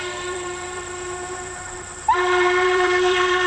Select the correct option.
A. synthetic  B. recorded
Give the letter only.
A